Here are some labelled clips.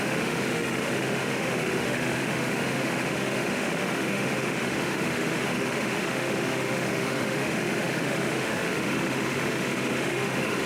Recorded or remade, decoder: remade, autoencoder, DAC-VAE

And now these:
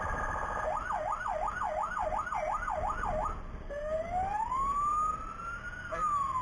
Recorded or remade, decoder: recorded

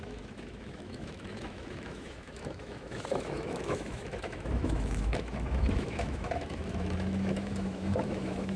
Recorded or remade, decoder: remade, autoencoder, DAC-VAE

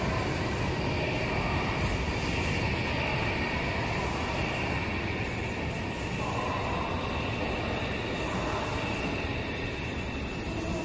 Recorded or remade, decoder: recorded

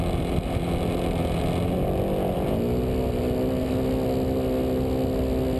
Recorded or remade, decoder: recorded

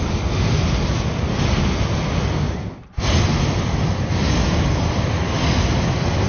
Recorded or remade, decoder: recorded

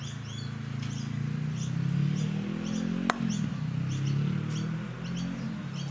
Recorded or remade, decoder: recorded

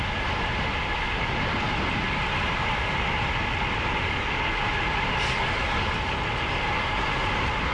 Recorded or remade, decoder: recorded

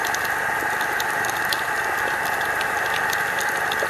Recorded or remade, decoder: recorded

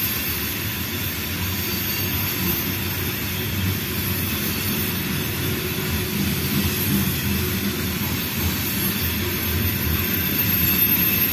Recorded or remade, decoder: recorded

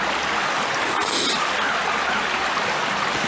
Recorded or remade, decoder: recorded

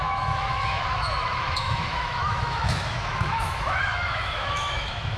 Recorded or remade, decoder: remade, autoencoder, DAC-VAE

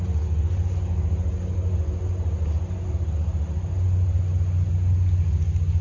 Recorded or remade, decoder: recorded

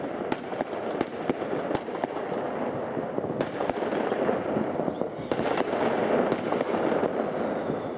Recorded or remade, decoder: recorded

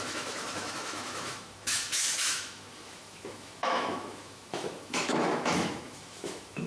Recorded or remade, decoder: remade, autoencoder, DAC-VAE